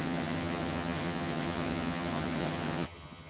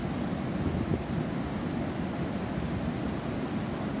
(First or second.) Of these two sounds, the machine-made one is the first